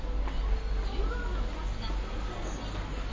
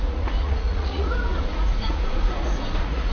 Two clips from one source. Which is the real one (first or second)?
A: first